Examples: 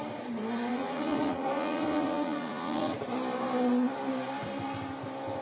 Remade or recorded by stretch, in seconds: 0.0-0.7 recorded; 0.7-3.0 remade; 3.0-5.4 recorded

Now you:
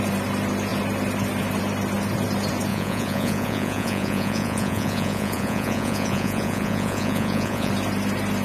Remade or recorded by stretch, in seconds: 0.0-2.7 recorded; 2.7-7.7 remade; 7.7-8.4 recorded

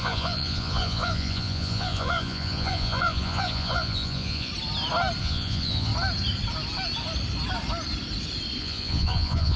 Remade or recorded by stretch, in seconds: 0.0-4.5 remade; 4.5-5.2 recorded; 5.2-5.9 remade; 5.9-8.6 recorded; 8.6-9.6 remade

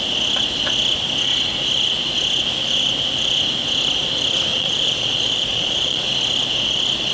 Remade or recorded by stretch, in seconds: 0.0-4.5 recorded; 4.5-6.1 remade; 6.1-7.1 recorded